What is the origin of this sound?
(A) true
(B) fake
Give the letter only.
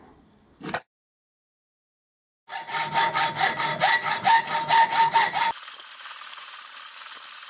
A